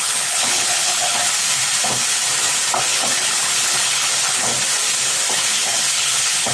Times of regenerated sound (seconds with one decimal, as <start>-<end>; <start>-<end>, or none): 0.0-1.1; 2.8-4.5; 5.3-6.5